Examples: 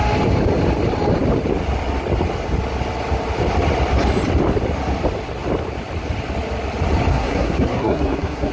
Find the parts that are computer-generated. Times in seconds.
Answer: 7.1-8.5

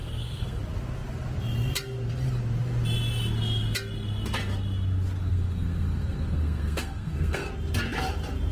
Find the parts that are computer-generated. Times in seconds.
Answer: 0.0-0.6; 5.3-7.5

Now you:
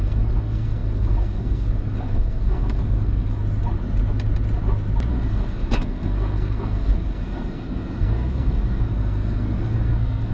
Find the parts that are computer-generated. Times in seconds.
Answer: 0.0-3.4; 5.1-10.3